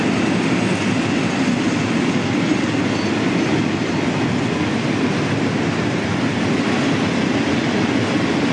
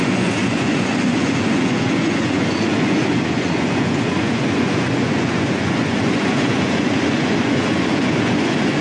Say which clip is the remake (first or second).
second